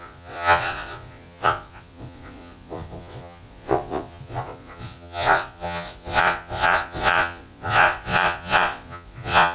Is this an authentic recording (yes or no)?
no